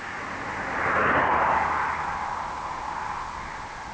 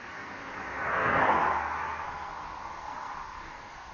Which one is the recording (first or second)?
first